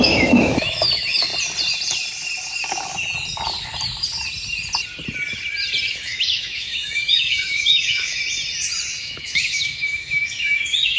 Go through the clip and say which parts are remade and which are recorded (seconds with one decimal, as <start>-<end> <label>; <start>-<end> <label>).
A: 0.0-1.3 remade; 1.3-5.9 recorded; 5.9-8.2 remade; 8.2-9.0 recorded; 9.0-11.0 remade